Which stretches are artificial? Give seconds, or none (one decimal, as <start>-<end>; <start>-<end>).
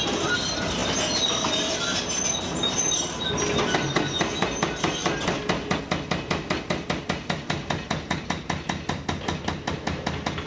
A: none